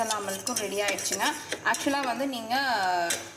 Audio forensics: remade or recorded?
recorded